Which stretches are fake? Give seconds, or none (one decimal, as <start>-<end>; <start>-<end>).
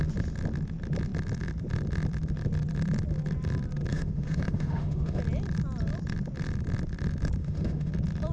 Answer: 3.9-5.2; 7.4-7.9